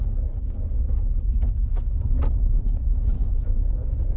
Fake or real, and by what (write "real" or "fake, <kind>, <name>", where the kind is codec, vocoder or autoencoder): real